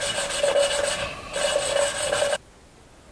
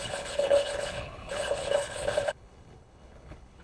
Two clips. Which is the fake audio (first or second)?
second